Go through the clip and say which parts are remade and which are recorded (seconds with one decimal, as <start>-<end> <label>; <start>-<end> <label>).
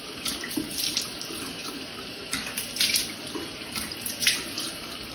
0.0-5.1 remade